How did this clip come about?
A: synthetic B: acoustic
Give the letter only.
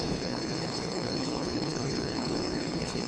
A